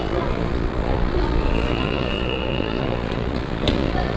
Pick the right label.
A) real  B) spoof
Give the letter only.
B